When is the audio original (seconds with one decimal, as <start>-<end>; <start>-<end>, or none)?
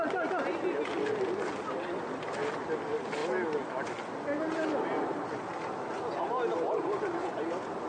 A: 0.0-7.9